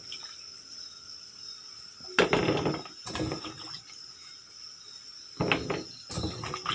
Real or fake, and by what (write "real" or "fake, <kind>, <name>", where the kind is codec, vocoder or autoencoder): real